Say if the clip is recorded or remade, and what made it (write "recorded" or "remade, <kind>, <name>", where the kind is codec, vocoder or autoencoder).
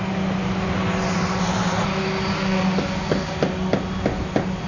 recorded